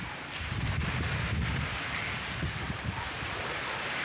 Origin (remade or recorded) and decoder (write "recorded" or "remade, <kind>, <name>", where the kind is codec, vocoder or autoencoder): recorded